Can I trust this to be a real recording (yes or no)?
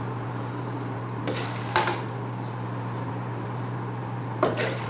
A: yes